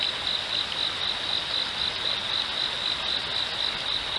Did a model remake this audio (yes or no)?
no